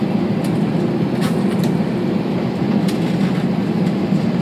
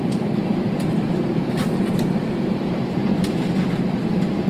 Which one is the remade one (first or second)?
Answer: second